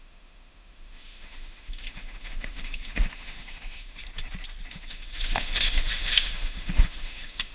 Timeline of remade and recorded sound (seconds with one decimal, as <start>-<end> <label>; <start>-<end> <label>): 0.0-4.0 remade; 4.0-4.7 recorded; 4.7-7.5 remade